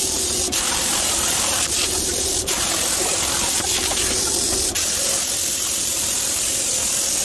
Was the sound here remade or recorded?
remade